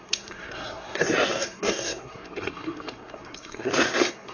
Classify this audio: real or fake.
fake